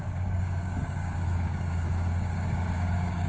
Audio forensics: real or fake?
fake